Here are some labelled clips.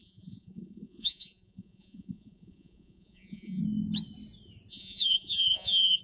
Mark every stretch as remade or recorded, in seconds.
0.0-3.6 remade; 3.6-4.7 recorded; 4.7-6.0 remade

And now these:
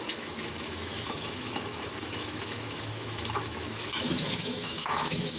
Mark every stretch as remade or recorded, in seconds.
0.0-5.4 remade

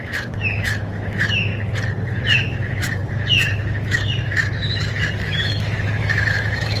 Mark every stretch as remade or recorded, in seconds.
0.0-1.5 remade; 1.5-2.2 recorded; 2.2-6.8 remade

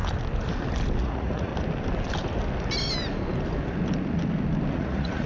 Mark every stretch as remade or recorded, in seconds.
0.0-1.0 recorded; 1.0-1.5 remade; 1.5-4.7 recorded; 4.7-5.3 remade

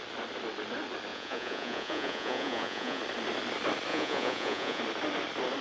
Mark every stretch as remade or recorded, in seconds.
0.0-1.1 recorded; 1.1-3.0 remade; 3.0-3.9 recorded; 3.9-4.8 remade; 4.8-5.6 recorded